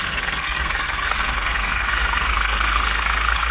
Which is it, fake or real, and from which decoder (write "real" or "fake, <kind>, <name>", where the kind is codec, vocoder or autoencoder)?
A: fake, codec, SNAC